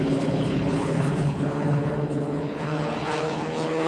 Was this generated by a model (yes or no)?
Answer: yes